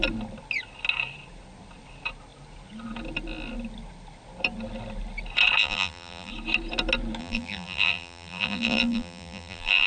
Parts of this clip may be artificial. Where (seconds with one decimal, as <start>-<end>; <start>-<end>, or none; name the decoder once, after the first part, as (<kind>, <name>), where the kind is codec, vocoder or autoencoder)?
5.6-6.3 (vocoder, BigVGAN v2); 7.2-9.9